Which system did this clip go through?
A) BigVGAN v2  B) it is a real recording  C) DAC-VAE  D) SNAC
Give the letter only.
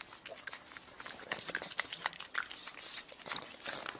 B